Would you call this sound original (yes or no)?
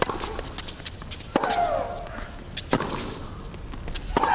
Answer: yes